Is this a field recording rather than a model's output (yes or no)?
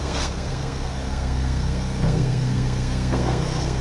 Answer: no